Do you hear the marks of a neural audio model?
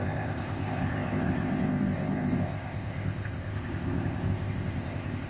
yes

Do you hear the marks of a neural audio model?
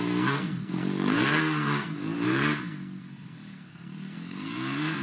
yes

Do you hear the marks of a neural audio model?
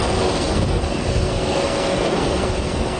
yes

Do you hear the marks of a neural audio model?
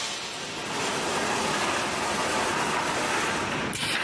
no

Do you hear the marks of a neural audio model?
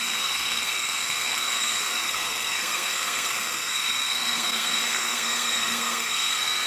yes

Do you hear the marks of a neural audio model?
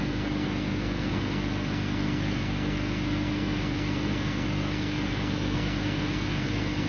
yes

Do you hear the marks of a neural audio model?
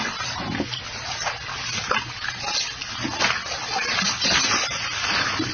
no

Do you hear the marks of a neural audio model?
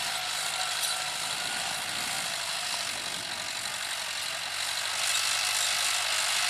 no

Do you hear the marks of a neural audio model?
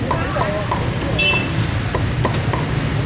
no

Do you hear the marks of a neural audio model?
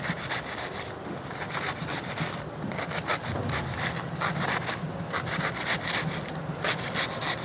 no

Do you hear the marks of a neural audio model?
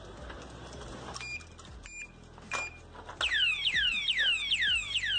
no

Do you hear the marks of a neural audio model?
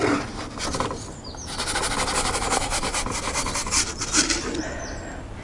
no